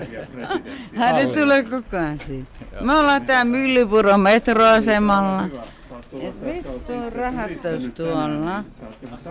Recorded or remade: recorded